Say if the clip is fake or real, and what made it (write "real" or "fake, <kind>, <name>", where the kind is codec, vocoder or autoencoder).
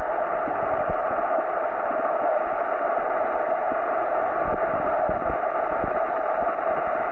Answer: real